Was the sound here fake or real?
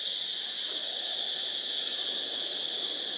real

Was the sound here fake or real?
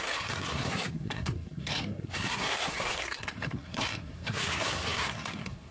fake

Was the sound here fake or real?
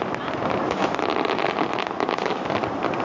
real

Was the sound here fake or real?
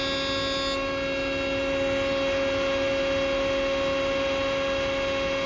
real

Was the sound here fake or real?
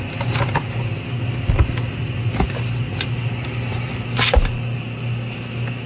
real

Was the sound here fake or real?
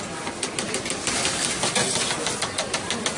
real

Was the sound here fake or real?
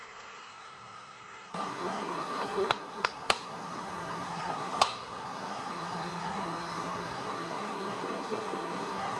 fake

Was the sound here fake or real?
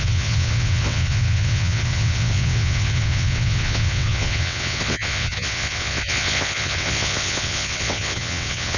fake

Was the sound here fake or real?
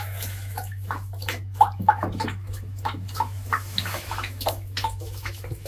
fake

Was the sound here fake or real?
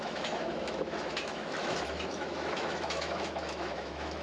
fake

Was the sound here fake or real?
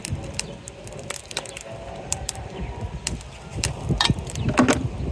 real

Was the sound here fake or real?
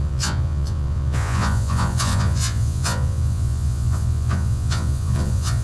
fake